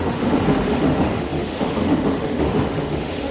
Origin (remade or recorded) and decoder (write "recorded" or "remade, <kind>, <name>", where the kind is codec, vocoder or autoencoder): remade, autoencoder, DAC-VAE